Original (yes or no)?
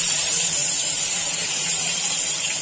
no